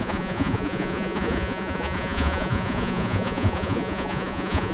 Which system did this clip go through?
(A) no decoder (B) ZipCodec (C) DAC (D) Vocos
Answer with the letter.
D